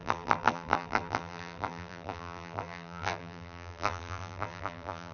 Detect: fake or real fake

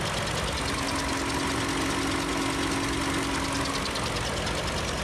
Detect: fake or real real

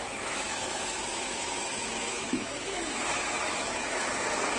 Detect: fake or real fake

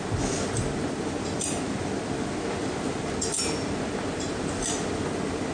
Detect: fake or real real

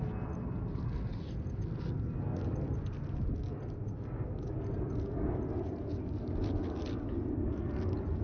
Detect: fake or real real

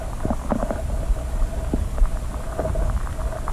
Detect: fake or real real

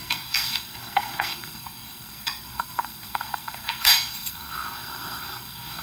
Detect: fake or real fake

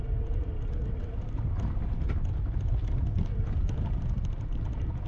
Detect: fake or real real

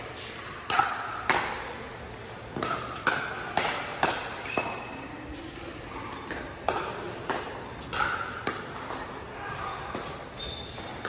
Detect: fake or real real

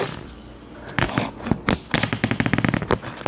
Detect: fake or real real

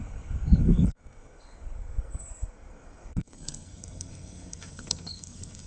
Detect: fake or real fake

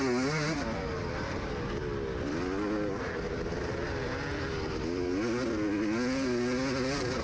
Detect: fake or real real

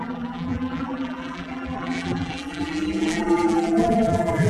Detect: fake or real fake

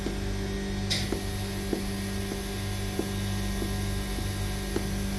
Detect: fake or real real